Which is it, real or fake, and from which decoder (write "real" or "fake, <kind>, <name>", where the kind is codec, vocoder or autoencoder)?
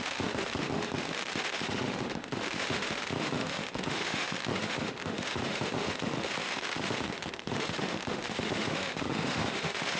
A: fake, autoencoder, DAC-VAE